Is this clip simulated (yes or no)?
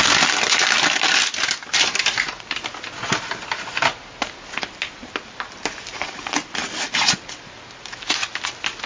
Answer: no